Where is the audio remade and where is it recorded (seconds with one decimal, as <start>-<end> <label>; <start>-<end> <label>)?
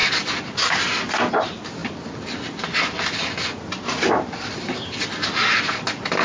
0.0-6.2 recorded